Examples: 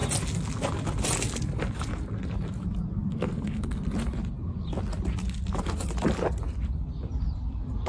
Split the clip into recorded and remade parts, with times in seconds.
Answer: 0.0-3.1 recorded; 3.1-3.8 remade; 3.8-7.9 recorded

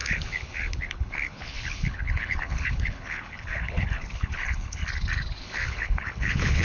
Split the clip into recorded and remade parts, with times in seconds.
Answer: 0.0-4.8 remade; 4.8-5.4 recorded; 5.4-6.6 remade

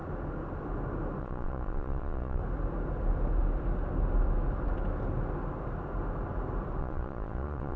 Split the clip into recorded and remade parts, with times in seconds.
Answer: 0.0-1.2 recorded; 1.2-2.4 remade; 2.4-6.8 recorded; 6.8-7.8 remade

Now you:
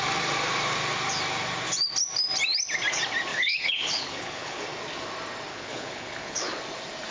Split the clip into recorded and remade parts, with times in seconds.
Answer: 0.0-3.3 recorded; 3.3-4.6 remade; 4.6-5.5 recorded; 5.5-6.6 remade; 6.6-7.1 recorded

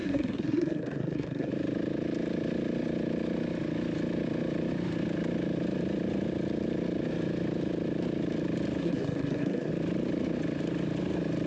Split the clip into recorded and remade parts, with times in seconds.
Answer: 0.0-1.5 remade; 1.5-8.8 recorded; 8.8-9.7 remade; 9.7-11.5 recorded